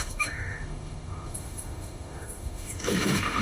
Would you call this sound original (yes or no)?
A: no